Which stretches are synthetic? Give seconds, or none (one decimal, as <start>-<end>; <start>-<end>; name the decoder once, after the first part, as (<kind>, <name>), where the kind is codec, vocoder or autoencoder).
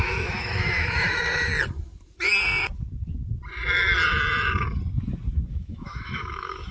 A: 0.0-1.5 (autoencoder, DAC-VAE); 5.5-6.7